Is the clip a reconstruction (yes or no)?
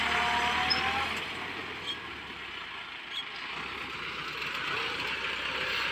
no